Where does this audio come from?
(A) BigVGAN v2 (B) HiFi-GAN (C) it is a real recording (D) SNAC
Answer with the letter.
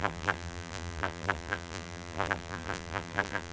A